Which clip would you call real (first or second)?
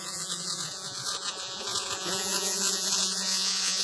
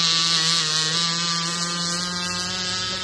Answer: second